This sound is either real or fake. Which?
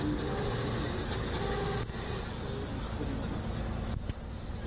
real